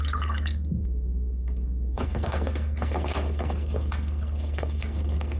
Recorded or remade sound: remade